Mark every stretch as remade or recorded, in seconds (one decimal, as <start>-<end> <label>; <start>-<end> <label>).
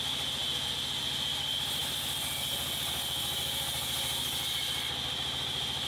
0.0-5.9 recorded